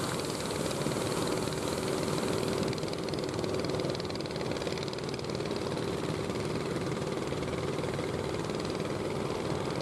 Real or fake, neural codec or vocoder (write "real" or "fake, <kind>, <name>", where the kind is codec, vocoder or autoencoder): real